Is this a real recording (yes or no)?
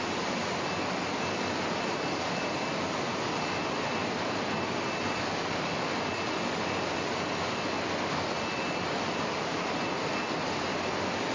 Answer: yes